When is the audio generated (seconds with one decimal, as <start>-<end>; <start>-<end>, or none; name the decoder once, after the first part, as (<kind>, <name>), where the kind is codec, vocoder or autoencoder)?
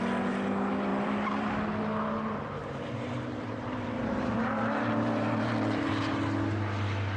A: 0.9-1.5 (vocoder, BigVGAN v2); 2.6-5.9